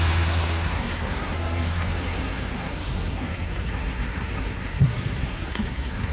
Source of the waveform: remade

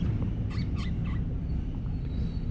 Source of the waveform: recorded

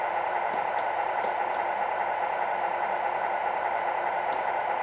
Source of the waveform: remade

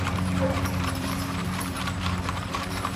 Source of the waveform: remade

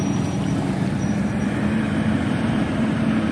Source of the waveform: remade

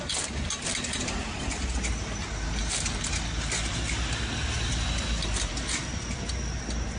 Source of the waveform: recorded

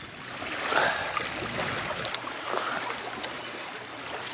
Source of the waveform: recorded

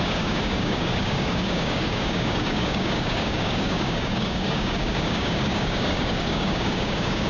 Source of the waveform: remade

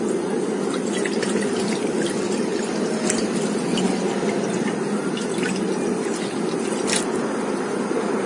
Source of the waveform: recorded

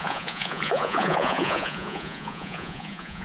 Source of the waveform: remade